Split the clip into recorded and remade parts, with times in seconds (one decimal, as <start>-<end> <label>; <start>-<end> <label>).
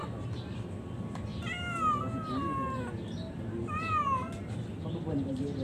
0.0-1.3 remade; 1.3-4.7 recorded; 4.7-5.6 remade